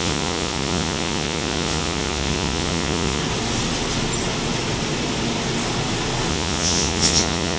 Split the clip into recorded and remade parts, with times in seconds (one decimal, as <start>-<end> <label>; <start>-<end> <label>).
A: 0.0-3.2 remade; 3.2-6.3 recorded; 6.3-7.6 remade